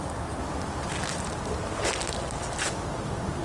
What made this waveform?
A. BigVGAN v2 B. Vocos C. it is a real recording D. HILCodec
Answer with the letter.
C